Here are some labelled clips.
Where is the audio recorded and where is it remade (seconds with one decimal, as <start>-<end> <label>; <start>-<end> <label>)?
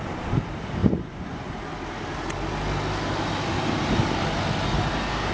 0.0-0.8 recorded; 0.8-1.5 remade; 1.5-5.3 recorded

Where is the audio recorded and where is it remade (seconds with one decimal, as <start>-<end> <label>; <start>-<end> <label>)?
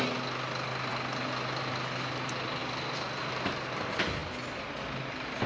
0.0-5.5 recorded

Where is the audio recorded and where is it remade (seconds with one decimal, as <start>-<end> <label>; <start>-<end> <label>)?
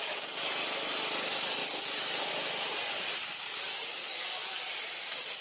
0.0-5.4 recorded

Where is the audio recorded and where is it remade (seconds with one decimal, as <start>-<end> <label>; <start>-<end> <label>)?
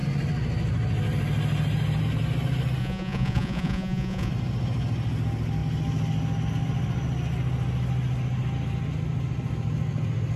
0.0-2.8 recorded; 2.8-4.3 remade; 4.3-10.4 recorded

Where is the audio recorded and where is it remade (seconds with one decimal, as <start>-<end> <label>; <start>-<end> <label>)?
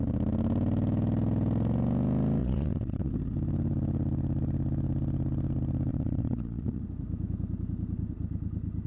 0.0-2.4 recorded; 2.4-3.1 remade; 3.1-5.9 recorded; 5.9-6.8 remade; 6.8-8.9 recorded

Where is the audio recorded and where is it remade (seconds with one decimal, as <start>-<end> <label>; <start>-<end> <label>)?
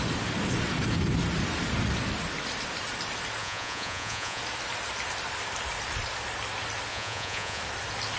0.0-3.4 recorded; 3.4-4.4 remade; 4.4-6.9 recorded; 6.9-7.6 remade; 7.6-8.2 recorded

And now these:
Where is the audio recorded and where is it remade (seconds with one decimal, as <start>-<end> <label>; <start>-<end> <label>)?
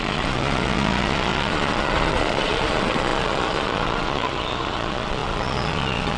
0.0-6.2 remade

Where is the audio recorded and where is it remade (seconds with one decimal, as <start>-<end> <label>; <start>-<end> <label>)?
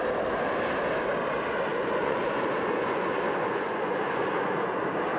0.0-1.7 recorded; 1.7-4.8 remade; 4.8-5.2 recorded